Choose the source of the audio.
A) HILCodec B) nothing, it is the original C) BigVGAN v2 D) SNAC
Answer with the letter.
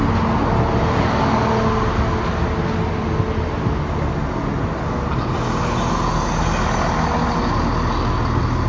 B